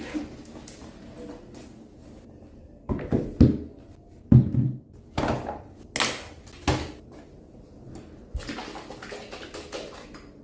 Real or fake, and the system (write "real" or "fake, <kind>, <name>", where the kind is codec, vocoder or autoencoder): real